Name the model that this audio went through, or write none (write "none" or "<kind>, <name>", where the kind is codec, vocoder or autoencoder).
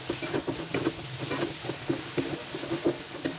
none